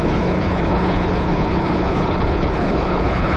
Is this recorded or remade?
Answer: remade